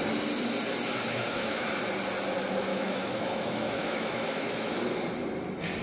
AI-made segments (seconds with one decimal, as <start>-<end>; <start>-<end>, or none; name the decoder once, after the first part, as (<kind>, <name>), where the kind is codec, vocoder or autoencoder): 1.1-1.8 (autoencoder, DAC-VAE); 2.7-4.8